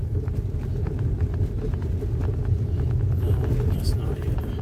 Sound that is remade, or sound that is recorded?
recorded